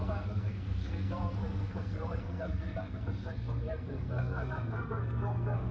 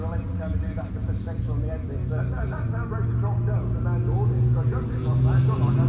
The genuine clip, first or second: second